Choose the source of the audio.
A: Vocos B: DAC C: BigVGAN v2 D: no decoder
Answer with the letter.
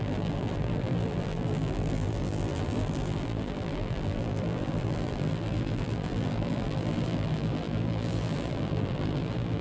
C